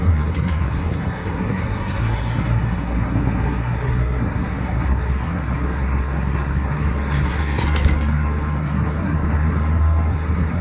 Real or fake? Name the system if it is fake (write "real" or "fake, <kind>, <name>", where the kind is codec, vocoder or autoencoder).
fake, codec, SNAC